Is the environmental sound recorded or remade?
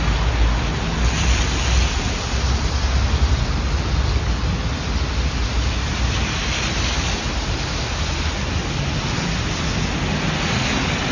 recorded